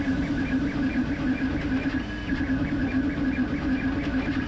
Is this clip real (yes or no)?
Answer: yes